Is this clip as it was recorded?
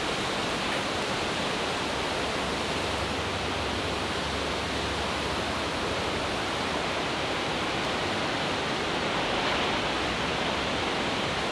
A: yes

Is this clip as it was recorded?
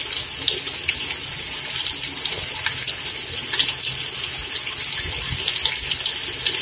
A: yes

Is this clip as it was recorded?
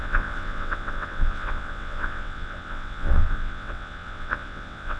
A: no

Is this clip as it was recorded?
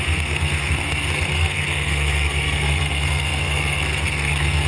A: no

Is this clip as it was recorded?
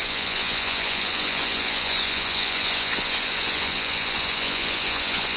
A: no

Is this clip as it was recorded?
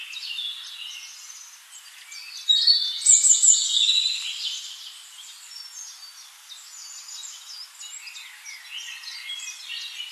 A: yes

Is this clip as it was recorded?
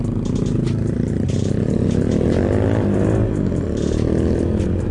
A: yes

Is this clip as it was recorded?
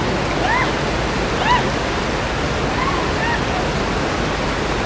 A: yes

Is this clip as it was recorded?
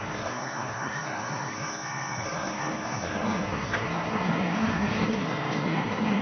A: no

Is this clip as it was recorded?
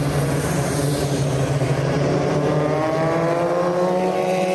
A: no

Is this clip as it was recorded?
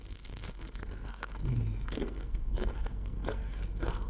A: no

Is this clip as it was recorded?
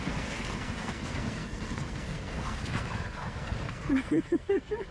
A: no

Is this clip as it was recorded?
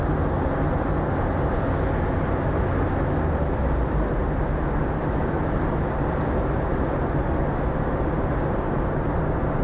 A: yes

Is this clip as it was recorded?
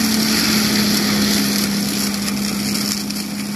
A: yes